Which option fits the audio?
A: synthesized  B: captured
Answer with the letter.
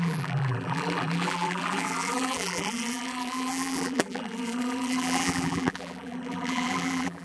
A